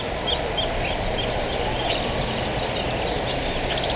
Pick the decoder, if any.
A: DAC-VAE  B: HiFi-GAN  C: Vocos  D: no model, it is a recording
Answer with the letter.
D